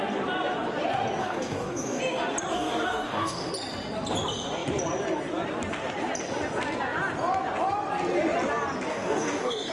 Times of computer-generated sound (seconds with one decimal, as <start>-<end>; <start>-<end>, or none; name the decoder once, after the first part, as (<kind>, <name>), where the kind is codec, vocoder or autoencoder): 1.2-2.0 (codec, DAC); 2.5-3.5; 8.9-9.7